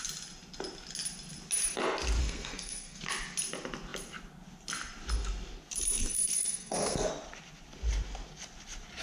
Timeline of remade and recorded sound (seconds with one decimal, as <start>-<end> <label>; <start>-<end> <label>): 0.0-2.2 recorded; 2.2-3.0 remade; 3.0-6.0 recorded; 6.0-7.1 remade; 7.1-9.0 recorded